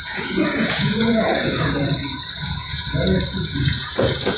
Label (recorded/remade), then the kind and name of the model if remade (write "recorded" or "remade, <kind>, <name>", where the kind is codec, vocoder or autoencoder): remade, vocoder, Vocos